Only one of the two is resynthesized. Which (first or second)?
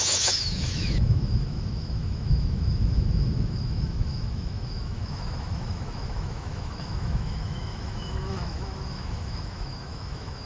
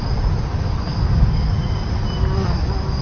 first